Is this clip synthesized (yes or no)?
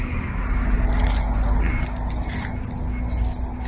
no